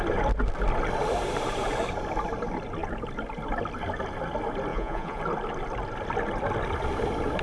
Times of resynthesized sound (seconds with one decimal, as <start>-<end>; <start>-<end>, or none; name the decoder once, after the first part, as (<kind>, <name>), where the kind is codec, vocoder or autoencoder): 4.7-5.2 (vocoder, Vocos)